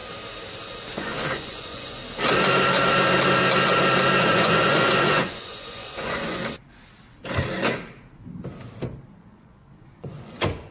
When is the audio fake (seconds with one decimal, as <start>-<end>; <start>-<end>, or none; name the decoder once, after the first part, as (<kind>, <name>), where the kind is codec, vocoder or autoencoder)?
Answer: 0.9-2.0 (vocoder, Vocos); 4.2-6.4; 9.2-10.7